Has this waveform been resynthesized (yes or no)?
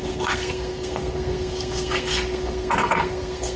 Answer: yes